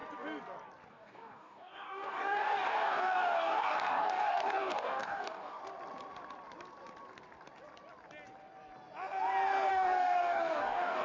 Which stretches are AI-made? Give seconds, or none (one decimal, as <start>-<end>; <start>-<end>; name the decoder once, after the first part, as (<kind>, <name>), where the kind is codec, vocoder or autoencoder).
0.9-5.6 (codec, DAC); 9.7-11.0

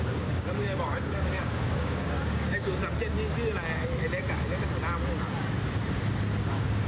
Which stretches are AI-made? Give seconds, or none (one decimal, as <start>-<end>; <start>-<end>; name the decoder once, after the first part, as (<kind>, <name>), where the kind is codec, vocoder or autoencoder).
0.0-2.7 (codec, DAC); 6.5-6.9

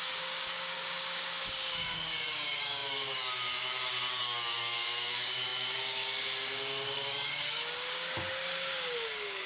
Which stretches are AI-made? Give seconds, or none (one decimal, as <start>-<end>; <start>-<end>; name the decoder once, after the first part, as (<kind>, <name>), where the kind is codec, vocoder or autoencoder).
0.0-9.5 (codec, DAC)

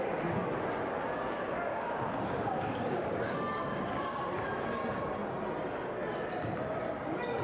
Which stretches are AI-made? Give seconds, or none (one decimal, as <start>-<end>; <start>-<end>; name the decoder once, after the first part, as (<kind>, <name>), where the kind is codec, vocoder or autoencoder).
1.7-4.2 (codec, DAC)

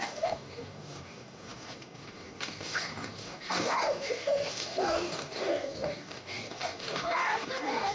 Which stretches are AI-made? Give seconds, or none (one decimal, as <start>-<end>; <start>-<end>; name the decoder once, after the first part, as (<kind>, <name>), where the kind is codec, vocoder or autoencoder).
0.0-7.9 (codec, DAC)

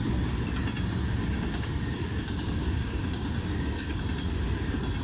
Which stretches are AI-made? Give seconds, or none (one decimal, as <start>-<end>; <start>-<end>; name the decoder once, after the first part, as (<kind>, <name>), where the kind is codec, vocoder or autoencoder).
1.0-4.0 (codec, DAC)

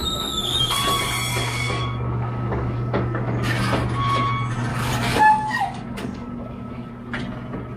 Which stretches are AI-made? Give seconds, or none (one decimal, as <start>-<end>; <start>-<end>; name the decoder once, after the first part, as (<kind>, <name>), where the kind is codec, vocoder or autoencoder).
0.0-0.8 (codec, DAC); 1.3-3.5; 4.7-6.9

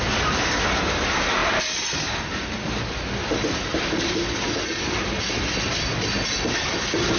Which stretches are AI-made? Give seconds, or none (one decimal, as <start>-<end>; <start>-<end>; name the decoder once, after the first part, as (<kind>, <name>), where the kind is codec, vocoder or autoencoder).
none